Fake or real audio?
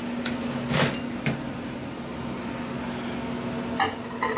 real